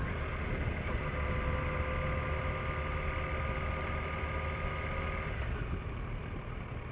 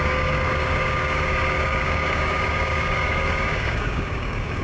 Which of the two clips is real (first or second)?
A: first